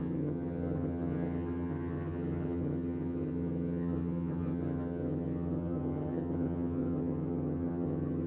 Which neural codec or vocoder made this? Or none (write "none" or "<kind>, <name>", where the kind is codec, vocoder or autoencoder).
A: vocoder, HiFi-GAN